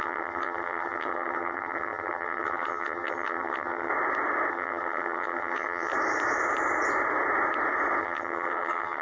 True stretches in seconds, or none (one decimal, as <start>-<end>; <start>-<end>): 3.9-4.5; 5.9-8.0